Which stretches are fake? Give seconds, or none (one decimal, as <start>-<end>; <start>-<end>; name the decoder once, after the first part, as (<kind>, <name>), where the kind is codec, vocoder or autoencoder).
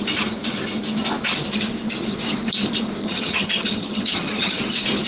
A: 3.0-4.6 (vocoder, HiFi-GAN)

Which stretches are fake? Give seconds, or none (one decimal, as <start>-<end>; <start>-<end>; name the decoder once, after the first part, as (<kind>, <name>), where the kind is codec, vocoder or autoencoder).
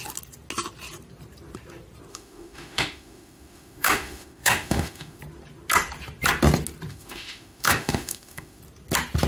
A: 2.1-5.2 (autoencoder, DAC-VAE); 6.9-8.6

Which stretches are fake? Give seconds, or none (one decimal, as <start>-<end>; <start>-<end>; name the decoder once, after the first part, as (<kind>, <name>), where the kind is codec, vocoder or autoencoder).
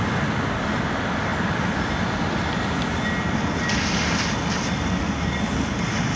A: none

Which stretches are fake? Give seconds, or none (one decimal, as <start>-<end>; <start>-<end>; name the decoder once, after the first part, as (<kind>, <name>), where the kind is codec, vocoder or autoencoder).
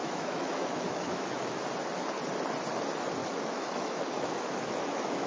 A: 0.0-1.6 (autoencoder, DAC-VAE); 3.2-5.3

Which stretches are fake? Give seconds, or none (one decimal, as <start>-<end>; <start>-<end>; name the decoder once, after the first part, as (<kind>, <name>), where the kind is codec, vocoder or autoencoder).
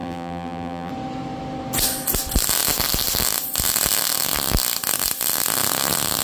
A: 0.0-0.9 (vocoder, BigVGAN v2)